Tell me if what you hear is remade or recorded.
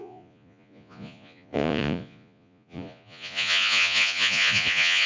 remade